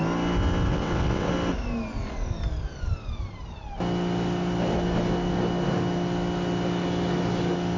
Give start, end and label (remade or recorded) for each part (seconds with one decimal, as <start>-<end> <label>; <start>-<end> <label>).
0.0-0.7 recorded; 0.7-1.3 remade; 1.3-7.8 recorded